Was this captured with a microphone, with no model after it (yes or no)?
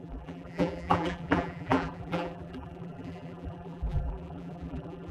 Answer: no